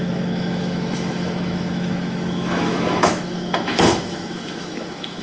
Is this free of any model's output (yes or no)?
no